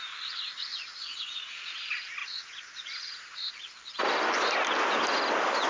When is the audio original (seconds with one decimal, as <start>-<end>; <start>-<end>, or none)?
0.0-0.7; 1.8-2.2; 3.5-5.7